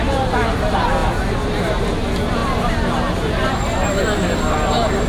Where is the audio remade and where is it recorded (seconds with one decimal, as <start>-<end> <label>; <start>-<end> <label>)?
0.0-5.1 recorded